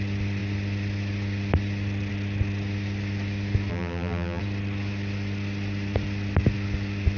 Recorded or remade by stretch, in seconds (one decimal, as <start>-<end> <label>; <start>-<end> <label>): 0.0-3.7 recorded; 3.7-4.4 remade; 4.4-7.2 recorded